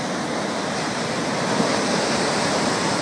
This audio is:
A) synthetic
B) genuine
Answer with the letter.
B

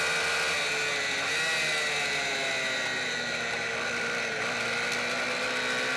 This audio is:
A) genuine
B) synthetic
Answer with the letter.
A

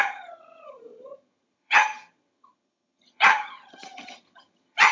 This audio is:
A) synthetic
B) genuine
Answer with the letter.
A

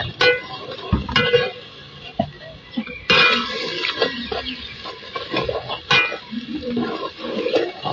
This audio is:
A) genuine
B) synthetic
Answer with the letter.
A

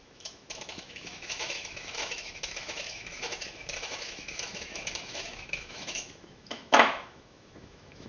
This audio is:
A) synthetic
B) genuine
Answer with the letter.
A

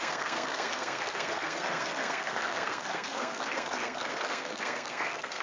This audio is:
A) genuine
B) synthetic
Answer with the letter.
B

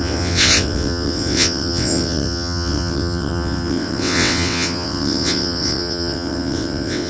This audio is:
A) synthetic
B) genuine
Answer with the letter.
A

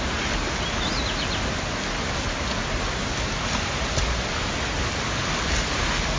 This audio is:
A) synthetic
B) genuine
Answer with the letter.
B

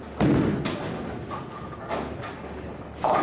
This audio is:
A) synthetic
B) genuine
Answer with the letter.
B